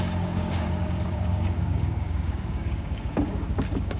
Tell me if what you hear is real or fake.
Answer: fake